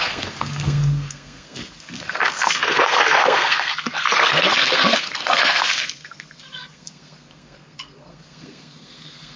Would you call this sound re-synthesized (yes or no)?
yes